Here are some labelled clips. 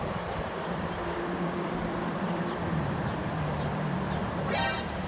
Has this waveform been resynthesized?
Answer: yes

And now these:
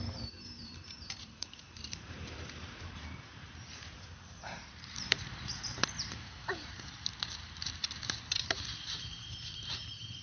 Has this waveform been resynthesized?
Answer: yes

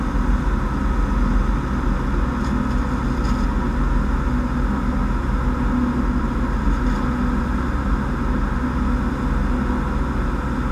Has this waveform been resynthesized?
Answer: no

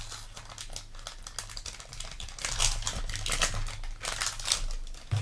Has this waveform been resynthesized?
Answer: no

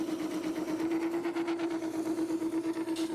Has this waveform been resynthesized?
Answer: no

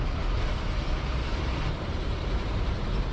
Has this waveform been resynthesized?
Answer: yes